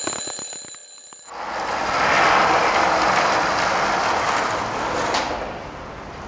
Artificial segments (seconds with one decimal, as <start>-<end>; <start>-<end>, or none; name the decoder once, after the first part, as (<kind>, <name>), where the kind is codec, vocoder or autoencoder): none